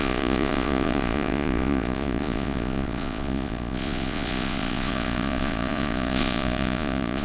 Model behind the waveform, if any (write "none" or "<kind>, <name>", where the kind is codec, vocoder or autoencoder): vocoder, Vocos